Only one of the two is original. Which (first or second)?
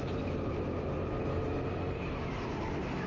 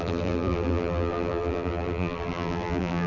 first